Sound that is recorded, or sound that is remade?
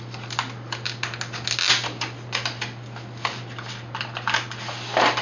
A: recorded